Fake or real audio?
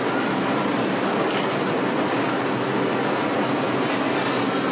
real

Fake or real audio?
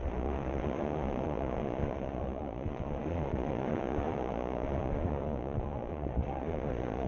fake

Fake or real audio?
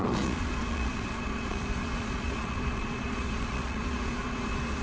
fake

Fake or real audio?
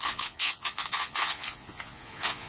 fake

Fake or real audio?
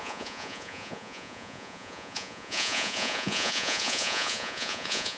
fake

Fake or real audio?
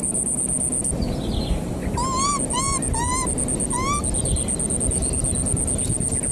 real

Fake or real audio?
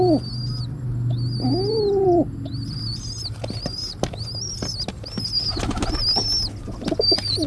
real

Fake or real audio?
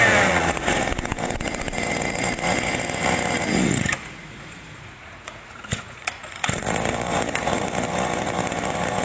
fake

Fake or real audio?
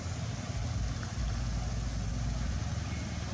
real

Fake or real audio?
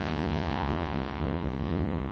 fake